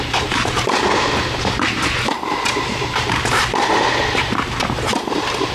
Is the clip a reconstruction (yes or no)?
yes